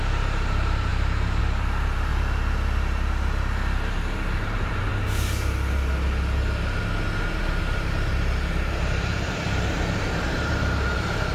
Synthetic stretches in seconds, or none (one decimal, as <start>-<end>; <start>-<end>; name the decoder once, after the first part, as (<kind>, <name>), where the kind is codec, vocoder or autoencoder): 0.0-2.1 (vocoder, BigVGAN v2); 4.4-4.9; 7.6-11.3